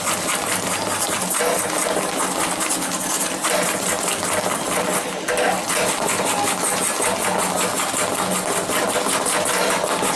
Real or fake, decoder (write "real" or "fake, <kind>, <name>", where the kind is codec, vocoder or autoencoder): real